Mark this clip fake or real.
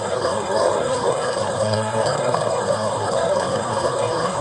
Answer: fake